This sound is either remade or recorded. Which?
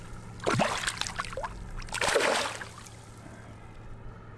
recorded